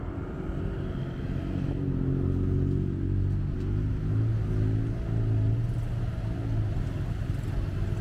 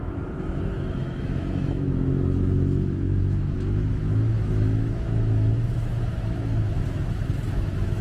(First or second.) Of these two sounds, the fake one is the second